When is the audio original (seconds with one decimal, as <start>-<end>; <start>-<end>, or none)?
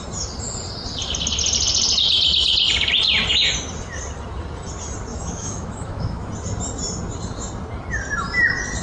0.0-5.1; 6.3-8.8